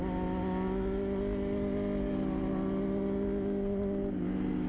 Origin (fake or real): real